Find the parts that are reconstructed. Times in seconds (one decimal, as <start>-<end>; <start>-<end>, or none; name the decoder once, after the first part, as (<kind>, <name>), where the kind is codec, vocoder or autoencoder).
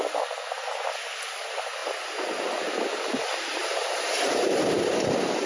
3.5-4.9 (vocoder, BigVGAN v2)